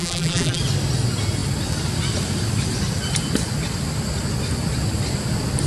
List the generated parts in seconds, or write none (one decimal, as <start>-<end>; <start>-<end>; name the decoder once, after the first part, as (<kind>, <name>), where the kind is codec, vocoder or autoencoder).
0.0-0.6 (vocoder, BigVGAN v2)